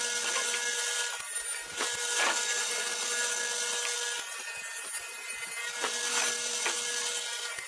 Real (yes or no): yes